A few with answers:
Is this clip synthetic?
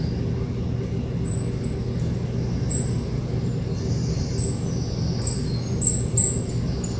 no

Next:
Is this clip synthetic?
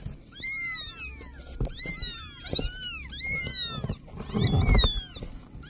no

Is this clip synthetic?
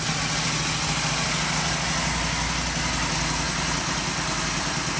no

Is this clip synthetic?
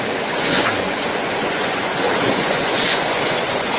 yes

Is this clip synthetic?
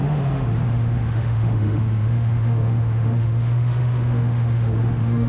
yes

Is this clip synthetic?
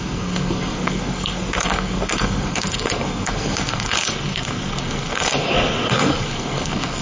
yes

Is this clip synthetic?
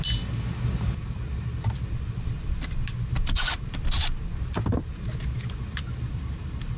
no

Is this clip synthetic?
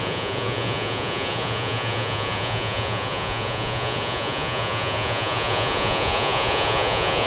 yes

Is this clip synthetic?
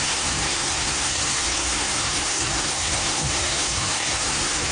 yes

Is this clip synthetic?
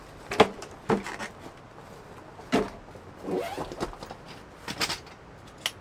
no